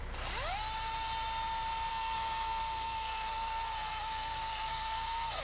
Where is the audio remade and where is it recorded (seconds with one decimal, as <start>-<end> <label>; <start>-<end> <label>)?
0.0-1.9 recorded; 1.9-5.4 remade

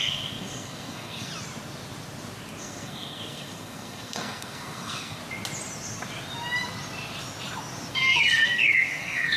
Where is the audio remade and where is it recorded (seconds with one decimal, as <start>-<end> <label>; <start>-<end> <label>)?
0.0-1.3 remade; 1.3-2.6 recorded; 2.6-5.2 remade; 5.2-7.9 recorded; 7.9-9.4 remade